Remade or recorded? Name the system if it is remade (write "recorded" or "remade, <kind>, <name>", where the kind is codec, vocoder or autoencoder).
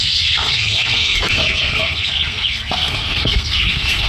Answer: remade, codec, SNAC